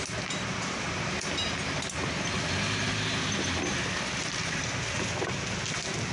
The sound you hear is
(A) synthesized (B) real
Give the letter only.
B